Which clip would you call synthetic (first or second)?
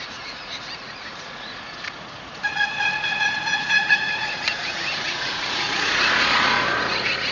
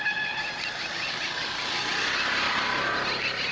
first